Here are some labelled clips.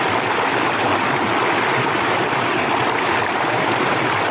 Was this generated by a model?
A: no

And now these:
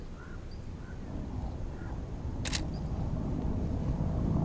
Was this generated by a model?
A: no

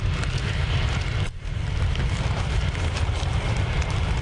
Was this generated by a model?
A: yes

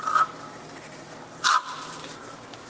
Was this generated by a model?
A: yes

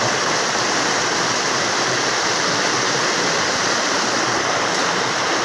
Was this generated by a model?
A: no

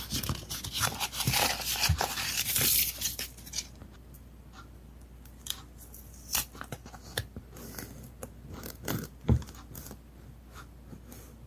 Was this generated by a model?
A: yes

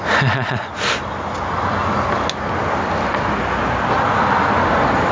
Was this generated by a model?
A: no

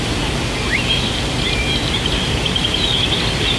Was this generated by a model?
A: yes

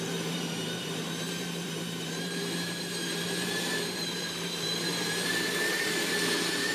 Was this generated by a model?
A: yes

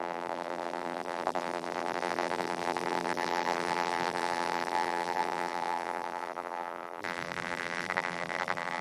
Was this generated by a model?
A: yes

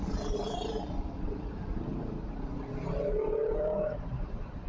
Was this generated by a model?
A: yes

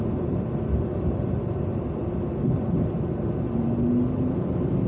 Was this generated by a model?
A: no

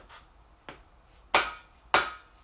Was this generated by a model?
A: no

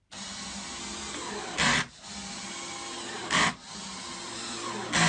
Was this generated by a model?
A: no